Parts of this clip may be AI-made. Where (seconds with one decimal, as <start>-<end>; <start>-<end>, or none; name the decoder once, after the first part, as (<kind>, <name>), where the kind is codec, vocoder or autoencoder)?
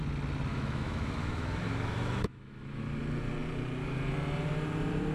0.5-2.8 (autoencoder, DAC-VAE)